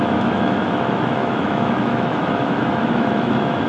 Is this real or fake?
fake